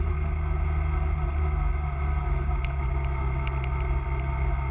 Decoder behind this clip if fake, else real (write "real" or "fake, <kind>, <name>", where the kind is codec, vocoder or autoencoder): real